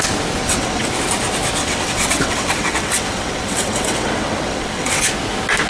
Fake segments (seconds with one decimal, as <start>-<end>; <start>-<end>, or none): 0.4-0.9; 1.6-5.0

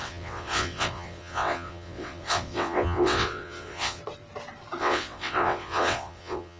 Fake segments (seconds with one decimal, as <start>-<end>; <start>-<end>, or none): 0.0-4.0; 4.8-6.6